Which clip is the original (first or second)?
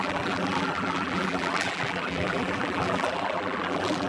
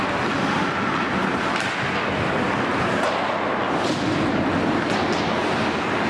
second